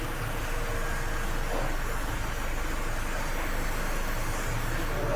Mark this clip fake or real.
real